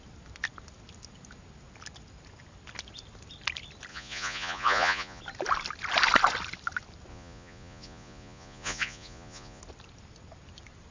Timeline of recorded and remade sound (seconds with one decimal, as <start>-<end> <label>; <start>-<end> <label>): 0.0-3.9 recorded; 3.9-5.2 remade; 5.2-7.1 recorded; 7.1-9.6 remade; 9.6-10.9 recorded